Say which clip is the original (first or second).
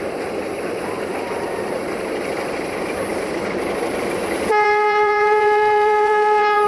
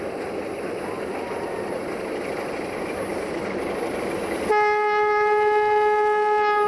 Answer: second